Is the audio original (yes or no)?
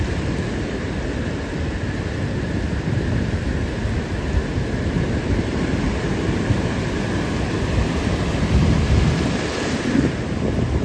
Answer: yes